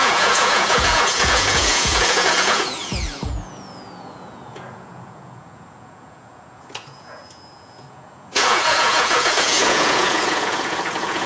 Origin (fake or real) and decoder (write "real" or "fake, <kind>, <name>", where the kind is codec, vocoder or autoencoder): fake, vocoder, Vocos